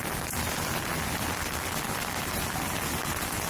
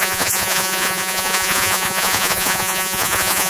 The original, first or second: first